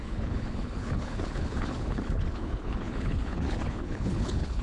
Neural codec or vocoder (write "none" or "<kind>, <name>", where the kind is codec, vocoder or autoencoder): codec, HILCodec